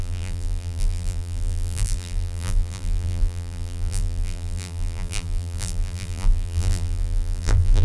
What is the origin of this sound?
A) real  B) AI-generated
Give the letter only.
B